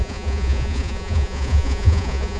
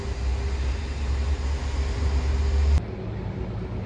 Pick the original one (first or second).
second